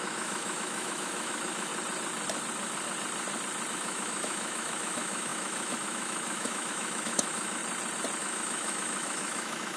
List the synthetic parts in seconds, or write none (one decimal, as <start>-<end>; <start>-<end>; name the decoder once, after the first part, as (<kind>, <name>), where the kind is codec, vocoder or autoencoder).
0.0-1.7 (autoencoder, DAC-VAE); 3.7-7.6; 8.2-9.8